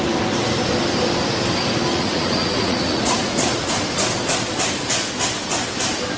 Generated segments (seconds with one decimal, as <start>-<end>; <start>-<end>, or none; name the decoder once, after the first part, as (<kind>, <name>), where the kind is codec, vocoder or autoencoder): 1.9-3.7 (vocoder, Vocos)